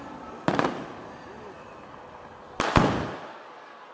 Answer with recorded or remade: recorded